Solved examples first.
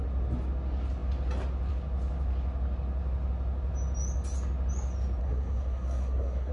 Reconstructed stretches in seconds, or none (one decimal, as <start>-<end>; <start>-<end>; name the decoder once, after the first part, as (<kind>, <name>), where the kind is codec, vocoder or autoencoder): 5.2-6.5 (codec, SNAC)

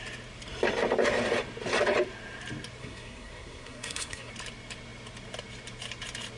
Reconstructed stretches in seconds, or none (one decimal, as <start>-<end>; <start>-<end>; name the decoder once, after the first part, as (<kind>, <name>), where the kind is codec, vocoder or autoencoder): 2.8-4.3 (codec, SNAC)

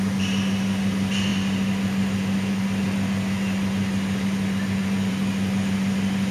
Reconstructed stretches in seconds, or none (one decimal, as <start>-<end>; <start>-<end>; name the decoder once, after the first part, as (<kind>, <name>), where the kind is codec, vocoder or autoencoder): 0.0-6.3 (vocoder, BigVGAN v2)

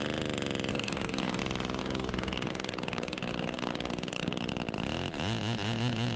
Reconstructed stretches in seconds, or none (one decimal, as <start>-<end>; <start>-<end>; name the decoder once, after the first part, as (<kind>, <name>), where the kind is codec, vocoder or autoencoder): 0.7-1.4 (codec, DAC); 1.8-4.5

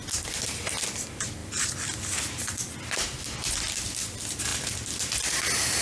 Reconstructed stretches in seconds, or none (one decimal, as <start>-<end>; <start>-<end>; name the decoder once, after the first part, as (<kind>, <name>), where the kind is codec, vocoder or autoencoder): 1.4-3.7 (vocoder, BigVGAN v2); 4.5-5.2

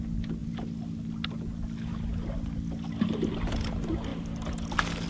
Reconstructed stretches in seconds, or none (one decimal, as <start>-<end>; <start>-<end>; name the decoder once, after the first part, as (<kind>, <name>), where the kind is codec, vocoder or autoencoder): none

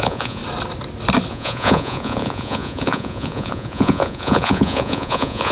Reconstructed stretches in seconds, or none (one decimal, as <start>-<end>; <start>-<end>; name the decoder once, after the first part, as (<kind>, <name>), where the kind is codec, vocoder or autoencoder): 0.0-0.4 (vocoder, Vocos); 1.3-5.5

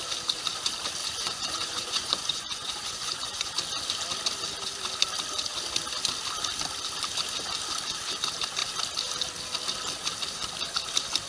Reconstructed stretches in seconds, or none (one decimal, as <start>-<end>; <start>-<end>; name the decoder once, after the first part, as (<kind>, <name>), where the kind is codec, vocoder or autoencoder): 1.0-3.5 (vocoder, Vocos)